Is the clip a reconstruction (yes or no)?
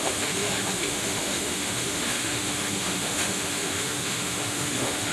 yes